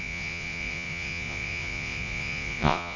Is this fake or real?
fake